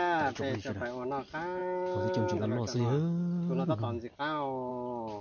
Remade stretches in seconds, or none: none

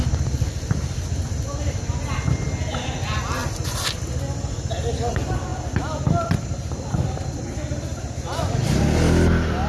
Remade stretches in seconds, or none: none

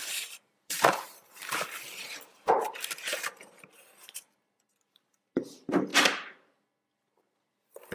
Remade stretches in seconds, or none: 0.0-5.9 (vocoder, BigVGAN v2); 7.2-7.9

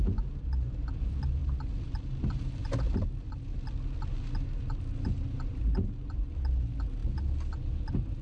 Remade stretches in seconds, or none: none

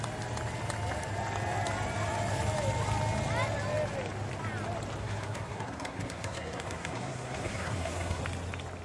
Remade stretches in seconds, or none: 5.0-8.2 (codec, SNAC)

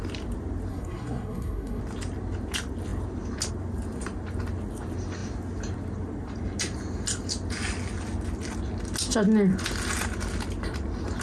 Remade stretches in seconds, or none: 0.7-1.8 (codec, SNAC)